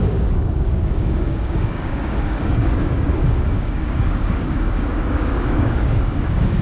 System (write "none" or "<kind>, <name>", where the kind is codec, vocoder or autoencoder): codec, DAC